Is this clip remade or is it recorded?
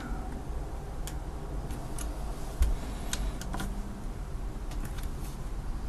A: recorded